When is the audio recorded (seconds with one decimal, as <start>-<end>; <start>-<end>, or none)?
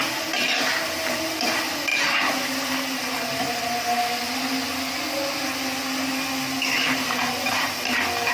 0.0-8.3